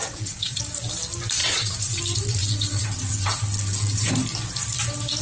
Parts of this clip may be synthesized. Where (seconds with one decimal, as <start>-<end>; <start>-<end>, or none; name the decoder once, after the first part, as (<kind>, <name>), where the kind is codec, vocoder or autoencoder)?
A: 0.0-0.6 (vocoder, WaveNeXt); 1.4-2.0; 2.4-4.1